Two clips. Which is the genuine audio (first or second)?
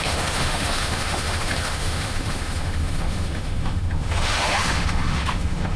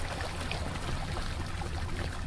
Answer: second